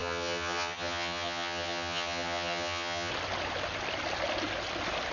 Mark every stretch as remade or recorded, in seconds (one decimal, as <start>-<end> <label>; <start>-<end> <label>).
0.0-3.1 remade; 3.1-5.1 recorded